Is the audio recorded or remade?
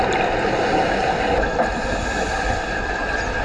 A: recorded